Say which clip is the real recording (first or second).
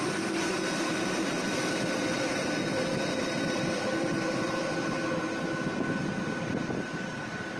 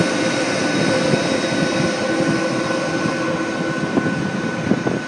second